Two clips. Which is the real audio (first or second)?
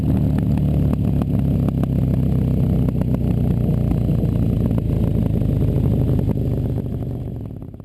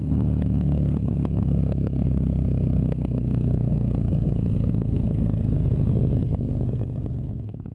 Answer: first